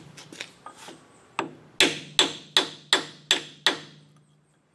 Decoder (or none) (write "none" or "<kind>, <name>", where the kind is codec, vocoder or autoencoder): none